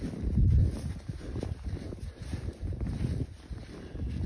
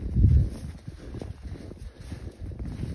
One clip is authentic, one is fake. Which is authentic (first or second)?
second